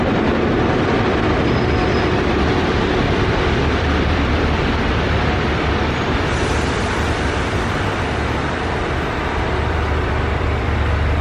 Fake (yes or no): yes